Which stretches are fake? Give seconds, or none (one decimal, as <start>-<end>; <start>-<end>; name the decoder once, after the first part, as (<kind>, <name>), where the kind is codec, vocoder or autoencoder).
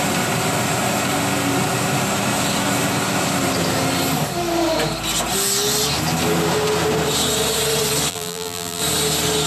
8.1-8.8 (vocoder, BigVGAN v2)